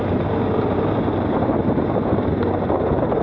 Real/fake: fake